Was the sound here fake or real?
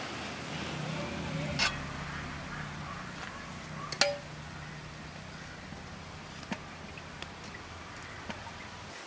real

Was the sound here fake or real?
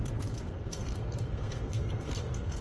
fake